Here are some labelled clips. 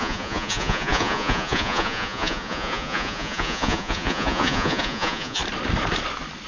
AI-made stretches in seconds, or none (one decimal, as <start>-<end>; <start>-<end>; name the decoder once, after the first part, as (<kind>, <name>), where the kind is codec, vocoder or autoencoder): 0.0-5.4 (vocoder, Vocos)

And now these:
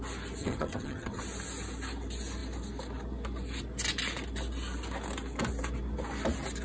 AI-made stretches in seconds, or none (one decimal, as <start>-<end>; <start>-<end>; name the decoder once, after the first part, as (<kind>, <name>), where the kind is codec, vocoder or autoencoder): 0.4-1.2 (vocoder, HiFi-GAN)

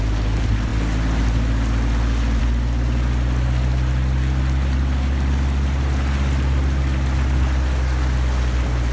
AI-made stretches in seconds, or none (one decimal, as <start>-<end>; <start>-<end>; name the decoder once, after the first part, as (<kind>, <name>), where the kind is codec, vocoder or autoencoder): none